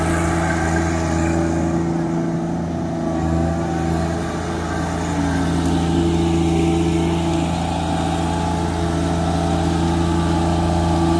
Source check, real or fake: real